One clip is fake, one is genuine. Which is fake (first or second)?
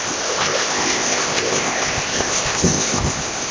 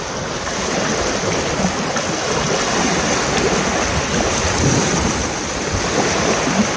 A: first